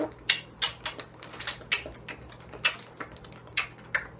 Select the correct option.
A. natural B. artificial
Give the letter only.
A